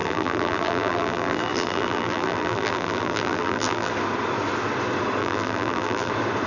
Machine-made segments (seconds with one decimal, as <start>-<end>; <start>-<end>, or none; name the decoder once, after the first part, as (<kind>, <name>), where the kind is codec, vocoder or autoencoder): 0.0-3.9 (vocoder, BigVGAN v2); 5.2-6.1

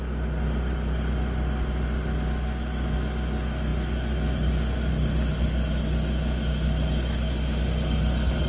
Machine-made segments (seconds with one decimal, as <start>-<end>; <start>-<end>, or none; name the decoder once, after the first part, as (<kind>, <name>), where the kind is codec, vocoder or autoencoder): none